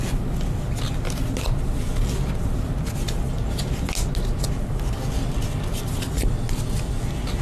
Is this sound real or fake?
real